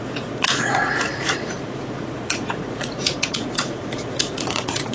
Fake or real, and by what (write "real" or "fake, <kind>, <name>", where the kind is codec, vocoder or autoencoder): fake, vocoder, Vocos